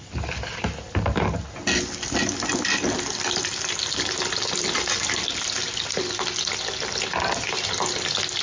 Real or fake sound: real